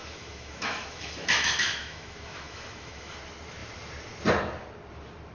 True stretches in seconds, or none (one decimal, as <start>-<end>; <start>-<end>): 3.2-5.3